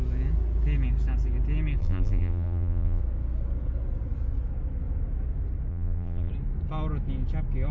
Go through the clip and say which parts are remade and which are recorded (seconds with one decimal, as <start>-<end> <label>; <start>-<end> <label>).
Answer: 0.0-1.8 recorded; 1.8-3.0 remade; 3.0-5.7 recorded; 5.7-6.3 remade; 6.3-7.7 recorded